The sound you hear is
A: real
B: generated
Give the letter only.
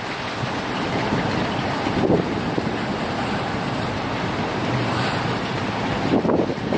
A